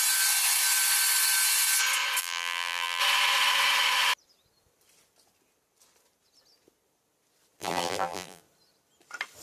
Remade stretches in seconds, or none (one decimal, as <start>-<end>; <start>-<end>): 2.2-3.0; 7.6-8.4